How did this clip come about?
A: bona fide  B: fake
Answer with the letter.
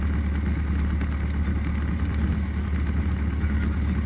A